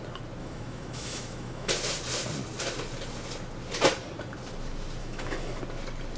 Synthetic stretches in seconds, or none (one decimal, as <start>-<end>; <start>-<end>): 0.4-1.7; 5.0-5.6